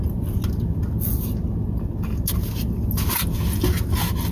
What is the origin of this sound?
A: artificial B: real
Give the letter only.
B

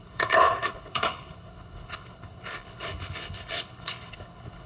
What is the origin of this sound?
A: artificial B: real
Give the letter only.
A